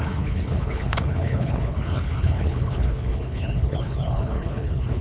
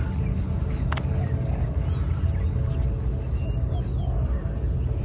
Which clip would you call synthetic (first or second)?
first